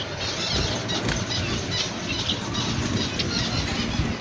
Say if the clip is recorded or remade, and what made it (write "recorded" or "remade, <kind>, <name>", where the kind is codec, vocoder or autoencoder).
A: recorded